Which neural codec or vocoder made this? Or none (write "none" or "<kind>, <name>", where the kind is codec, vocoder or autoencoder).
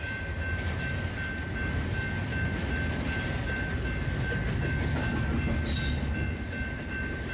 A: none